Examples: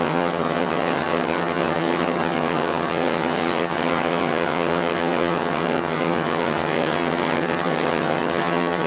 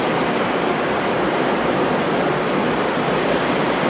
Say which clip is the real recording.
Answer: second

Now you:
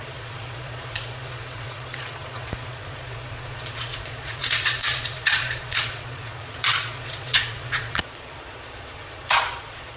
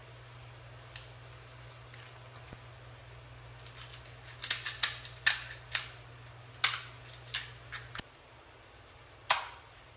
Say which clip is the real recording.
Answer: second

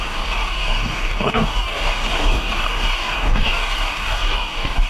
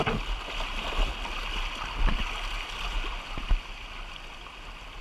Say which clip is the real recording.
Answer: second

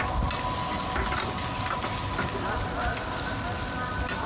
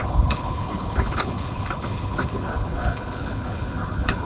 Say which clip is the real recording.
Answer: first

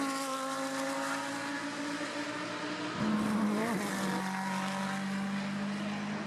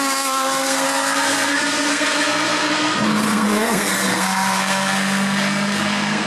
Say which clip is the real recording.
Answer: first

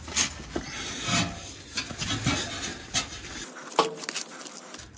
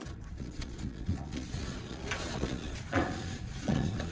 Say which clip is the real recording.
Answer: first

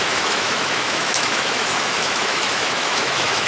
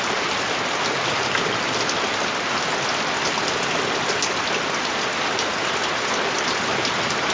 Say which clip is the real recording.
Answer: second